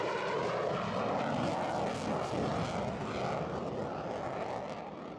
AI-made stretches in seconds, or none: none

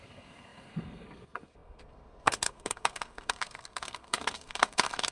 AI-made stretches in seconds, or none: 0.0-5.1 (codec, SNAC)

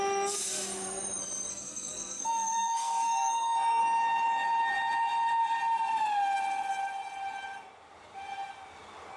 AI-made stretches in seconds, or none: 1.5-3.8 (codec, SNAC)